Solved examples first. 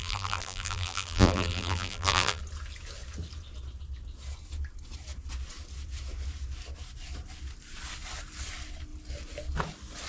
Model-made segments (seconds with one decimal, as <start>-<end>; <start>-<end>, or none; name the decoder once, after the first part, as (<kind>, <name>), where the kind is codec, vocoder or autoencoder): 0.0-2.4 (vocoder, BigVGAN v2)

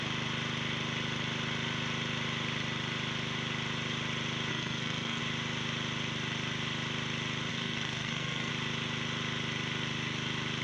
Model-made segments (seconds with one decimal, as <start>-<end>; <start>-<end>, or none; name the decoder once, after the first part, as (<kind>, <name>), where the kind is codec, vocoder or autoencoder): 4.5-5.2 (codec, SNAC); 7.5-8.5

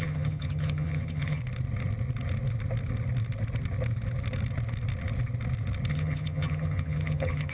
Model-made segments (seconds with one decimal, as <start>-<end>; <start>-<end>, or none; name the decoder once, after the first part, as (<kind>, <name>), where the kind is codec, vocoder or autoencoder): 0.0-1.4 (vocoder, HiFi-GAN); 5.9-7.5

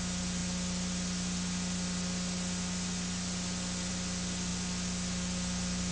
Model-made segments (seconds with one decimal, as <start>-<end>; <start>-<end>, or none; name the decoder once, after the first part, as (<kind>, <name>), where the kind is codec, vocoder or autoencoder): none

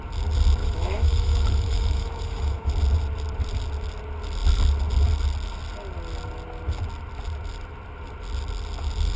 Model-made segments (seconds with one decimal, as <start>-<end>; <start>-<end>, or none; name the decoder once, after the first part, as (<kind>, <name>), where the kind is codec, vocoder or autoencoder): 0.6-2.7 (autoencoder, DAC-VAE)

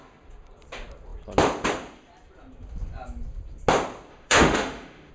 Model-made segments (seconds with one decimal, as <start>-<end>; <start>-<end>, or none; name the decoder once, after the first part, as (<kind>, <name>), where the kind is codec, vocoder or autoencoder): 4.1-5.1 (autoencoder, DAC-VAE)

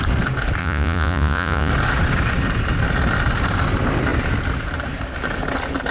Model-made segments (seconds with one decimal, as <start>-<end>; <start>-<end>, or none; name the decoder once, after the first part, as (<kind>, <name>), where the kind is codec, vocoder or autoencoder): 0.6-1.7 (vocoder, Vocos)

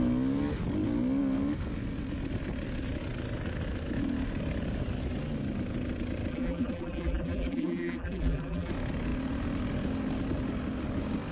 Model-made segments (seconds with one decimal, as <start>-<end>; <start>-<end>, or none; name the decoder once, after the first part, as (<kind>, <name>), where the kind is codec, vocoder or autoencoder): 6.3-8.7 (vocoder, BigVGAN v2)